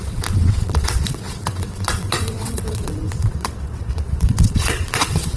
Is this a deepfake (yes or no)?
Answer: yes